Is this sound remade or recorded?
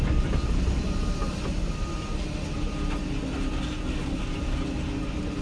recorded